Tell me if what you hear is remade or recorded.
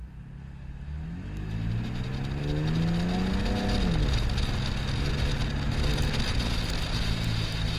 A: recorded